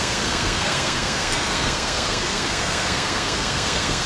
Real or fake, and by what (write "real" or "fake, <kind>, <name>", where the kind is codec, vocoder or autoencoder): fake, codec, SNAC